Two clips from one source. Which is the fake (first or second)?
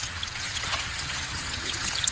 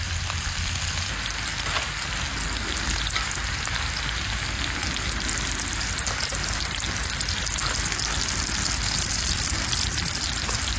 first